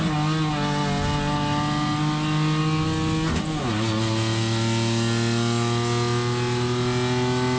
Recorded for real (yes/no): yes